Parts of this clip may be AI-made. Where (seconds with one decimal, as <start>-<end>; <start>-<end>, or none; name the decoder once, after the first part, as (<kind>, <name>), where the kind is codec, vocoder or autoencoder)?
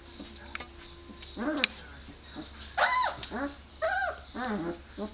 none